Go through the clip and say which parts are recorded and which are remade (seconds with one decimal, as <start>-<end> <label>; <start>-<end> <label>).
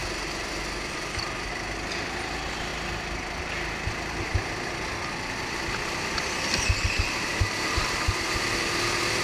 0.0-9.2 recorded